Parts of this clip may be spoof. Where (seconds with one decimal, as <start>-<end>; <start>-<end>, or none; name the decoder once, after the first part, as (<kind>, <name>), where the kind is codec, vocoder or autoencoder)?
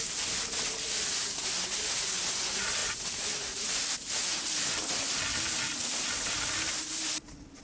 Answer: none